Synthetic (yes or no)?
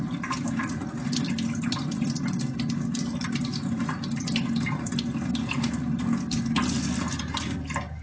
no